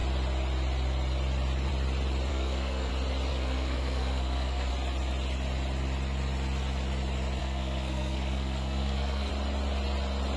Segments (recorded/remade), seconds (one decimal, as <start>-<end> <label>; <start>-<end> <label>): 0.0-2.3 recorded; 2.3-2.9 remade; 2.9-3.3 recorded; 3.3-4.7 remade; 4.7-7.4 recorded; 7.4-9.3 remade; 9.3-10.4 recorded